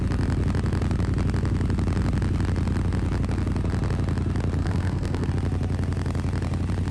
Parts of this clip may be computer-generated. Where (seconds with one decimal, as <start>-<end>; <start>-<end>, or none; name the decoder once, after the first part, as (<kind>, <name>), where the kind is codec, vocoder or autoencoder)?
4.6-5.3 (codec, SNAC)